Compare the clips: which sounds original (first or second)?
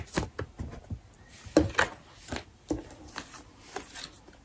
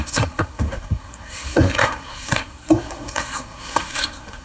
first